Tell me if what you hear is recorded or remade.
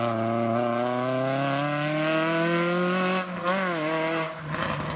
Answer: recorded